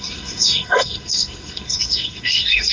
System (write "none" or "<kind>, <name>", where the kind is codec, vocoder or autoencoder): codec, SNAC